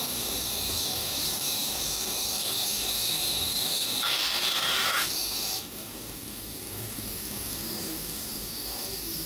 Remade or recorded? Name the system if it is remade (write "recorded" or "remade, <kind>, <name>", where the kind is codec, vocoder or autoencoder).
remade, codec, DAC